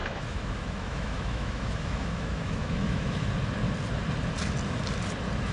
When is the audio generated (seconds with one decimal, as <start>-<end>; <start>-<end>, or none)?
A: 0.0-3.3